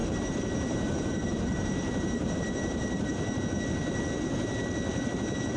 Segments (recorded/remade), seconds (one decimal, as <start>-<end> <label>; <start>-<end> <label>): 0.0-3.4 remade; 3.4-5.6 recorded